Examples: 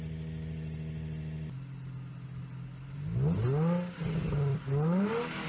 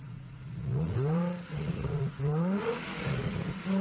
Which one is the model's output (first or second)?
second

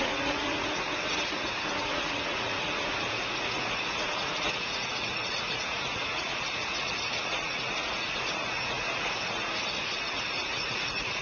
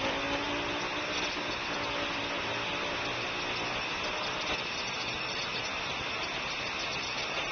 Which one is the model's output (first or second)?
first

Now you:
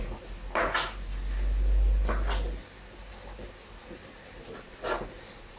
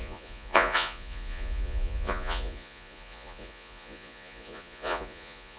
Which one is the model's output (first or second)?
second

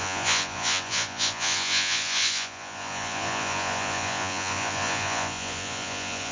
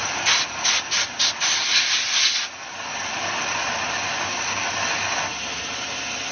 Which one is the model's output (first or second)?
first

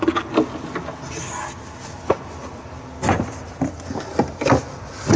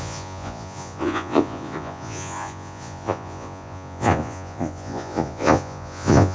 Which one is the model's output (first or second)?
second